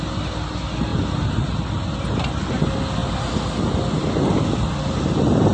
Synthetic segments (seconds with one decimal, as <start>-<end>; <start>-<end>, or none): none